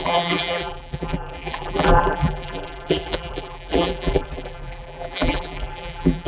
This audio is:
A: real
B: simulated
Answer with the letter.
B